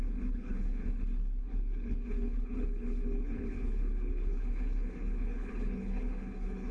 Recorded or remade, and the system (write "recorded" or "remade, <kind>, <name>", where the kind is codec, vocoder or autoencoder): remade, codec, HILCodec